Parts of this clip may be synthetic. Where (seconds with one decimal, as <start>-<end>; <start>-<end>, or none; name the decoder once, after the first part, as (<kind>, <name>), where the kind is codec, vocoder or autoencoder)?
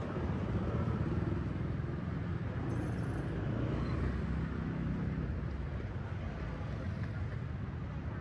none